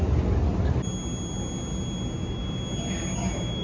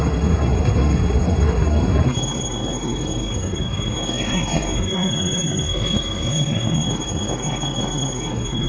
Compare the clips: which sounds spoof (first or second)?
second